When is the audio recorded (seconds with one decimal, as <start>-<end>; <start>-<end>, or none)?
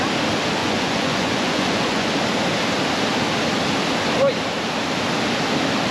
0.0-0.6; 2.1-5.9